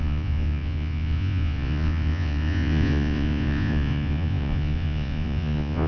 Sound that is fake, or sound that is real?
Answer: fake